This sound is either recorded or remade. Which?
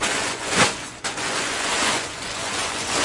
remade